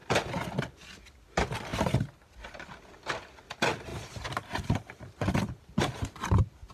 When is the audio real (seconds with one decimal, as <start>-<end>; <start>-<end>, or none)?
0.6-1.7; 2.4-3.9